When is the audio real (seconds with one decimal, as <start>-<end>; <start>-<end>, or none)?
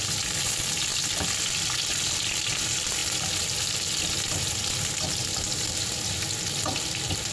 0.0-7.3